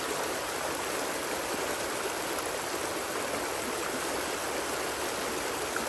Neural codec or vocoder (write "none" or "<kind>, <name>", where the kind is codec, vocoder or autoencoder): none